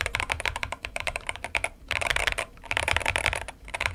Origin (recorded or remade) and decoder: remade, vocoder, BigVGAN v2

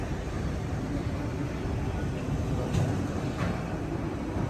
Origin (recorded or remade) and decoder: recorded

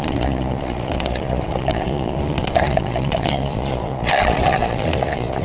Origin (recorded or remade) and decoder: remade, vocoder, Vocos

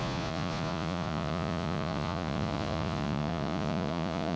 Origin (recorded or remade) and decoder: remade, vocoder, Vocos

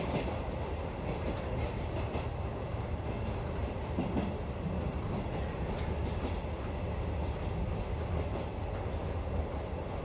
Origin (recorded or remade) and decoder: recorded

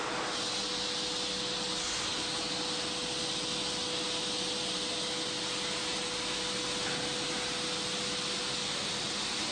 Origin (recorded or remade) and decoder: recorded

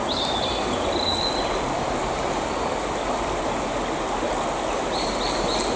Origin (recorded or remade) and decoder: recorded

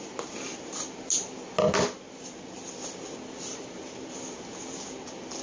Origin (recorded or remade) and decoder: recorded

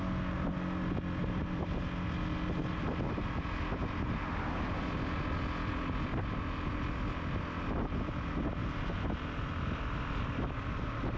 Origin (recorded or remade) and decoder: recorded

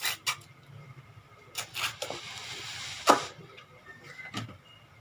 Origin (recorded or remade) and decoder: recorded